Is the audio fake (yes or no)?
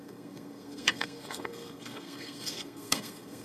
yes